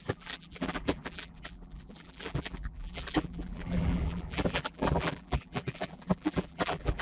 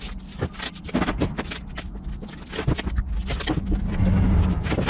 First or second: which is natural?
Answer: second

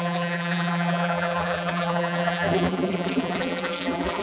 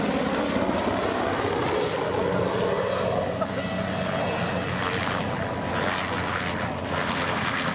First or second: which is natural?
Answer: second